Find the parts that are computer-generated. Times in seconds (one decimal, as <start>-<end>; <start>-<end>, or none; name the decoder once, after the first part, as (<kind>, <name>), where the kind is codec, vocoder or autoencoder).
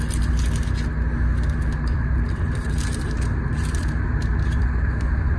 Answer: 2.0-5.4 (vocoder, BigVGAN v2)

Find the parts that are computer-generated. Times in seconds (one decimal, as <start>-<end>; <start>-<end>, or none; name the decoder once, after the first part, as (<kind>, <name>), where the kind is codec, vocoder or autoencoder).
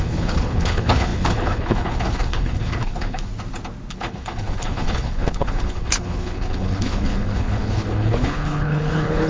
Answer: 0.0-3.3 (codec, HILCodec); 3.9-9.3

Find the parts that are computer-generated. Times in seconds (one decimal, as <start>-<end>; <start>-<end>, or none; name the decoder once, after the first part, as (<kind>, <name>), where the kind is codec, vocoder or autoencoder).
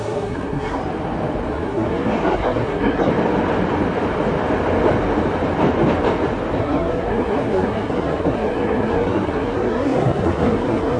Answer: 0.0-0.8 (codec, SNAC); 1.5-3.1; 6.6-11.0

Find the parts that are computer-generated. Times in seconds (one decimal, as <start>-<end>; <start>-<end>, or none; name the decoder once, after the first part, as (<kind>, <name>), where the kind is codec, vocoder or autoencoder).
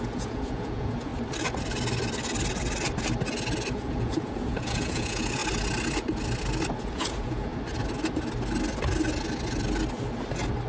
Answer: 0.0-1.1 (vocoder, Vocos); 3.7-5.4; 6.8-7.5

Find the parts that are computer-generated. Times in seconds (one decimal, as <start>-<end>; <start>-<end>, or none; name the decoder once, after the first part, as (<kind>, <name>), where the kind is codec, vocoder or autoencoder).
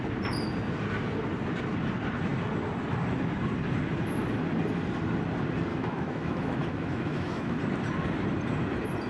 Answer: 5.7-7.6 (autoencoder, DAC-VAE)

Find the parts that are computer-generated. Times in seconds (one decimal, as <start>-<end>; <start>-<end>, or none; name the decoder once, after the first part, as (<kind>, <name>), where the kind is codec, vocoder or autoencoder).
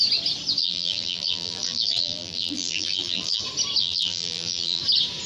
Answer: 0.6-3.4 (vocoder, BigVGAN v2); 3.8-4.8